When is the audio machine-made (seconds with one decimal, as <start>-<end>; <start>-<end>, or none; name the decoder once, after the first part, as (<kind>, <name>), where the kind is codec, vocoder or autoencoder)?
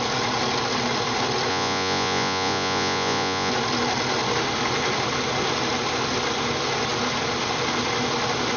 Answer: 1.5-3.5 (vocoder, Vocos)